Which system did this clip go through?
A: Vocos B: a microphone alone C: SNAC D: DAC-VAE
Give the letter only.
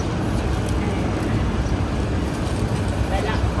B